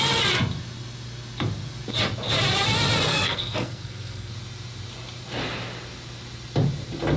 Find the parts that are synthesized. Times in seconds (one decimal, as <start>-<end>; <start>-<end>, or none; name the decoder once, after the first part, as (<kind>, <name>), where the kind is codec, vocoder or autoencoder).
3.1-4.3 (codec, SNAC)